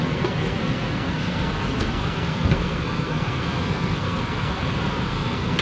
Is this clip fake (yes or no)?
yes